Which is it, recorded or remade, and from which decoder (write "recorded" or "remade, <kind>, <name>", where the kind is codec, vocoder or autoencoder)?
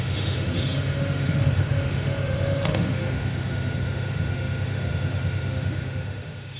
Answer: remade, autoencoder, DAC-VAE